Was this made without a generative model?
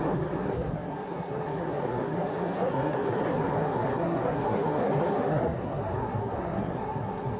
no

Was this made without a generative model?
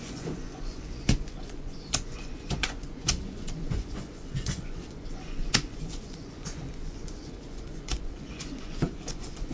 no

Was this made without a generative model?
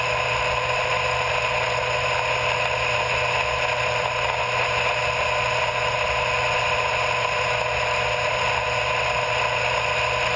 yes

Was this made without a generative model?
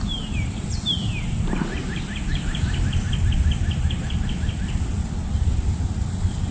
yes